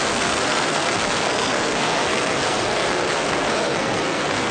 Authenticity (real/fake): fake